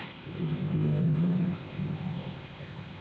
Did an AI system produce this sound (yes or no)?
yes